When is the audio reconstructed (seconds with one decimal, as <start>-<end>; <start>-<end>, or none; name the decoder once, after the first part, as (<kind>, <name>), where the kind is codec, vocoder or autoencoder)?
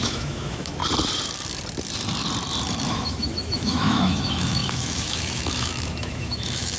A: 0.0-0.8 (autoencoder, DAC-VAE); 2.9-6.8